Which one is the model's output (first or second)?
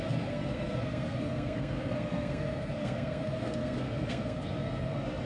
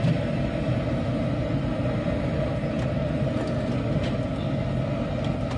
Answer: first